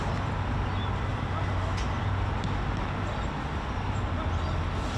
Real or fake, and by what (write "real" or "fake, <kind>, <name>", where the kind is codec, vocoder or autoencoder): real